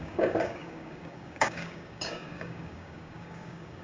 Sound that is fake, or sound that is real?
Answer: fake